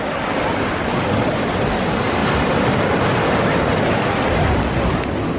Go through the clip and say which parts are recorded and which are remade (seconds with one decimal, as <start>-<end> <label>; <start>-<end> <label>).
0.0-2.2 recorded; 2.2-3.9 remade; 3.9-5.4 recorded